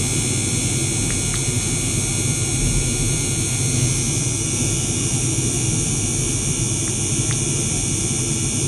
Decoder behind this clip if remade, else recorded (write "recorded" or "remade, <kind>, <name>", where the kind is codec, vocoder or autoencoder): recorded